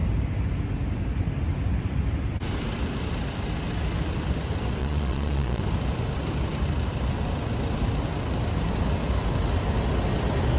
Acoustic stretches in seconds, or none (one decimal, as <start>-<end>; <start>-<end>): 0.0-4.8; 5.6-10.6